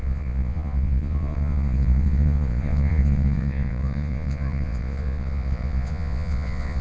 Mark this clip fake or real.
fake